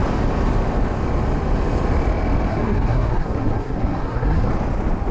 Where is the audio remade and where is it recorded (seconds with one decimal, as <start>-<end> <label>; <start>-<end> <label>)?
0.0-2.5 recorded; 2.5-4.5 remade; 4.5-5.1 recorded